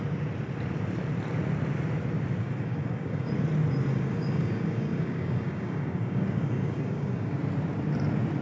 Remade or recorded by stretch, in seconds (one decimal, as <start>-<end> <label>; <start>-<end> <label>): 0.0-2.4 recorded; 2.4-3.3 remade; 3.3-3.9 recorded; 3.9-7.4 remade; 7.4-8.4 recorded